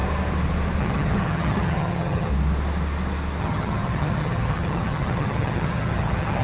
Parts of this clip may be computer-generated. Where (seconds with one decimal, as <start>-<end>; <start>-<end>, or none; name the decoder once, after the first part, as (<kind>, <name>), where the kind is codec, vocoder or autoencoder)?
0.8-2.3 (vocoder, HiFi-GAN); 3.4-6.4